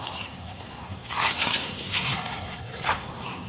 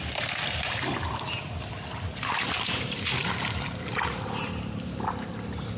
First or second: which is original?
second